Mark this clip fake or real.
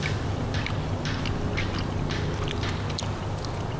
real